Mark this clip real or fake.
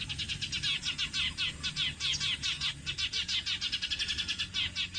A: real